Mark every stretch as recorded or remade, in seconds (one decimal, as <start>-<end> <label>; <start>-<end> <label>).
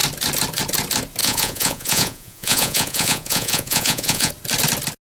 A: 0.0-1.2 recorded; 1.2-4.3 remade; 4.3-5.1 recorded